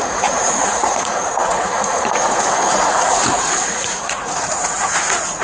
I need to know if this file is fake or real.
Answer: fake